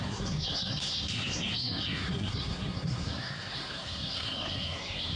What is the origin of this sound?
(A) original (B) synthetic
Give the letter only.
B